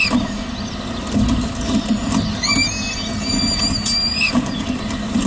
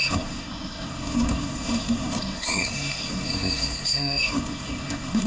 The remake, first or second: second